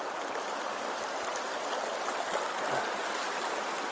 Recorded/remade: recorded